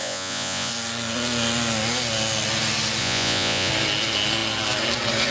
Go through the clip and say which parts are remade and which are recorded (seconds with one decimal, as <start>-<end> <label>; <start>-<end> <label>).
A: 0.0-0.7 remade; 0.7-3.0 recorded; 3.0-3.7 remade; 3.7-5.3 recorded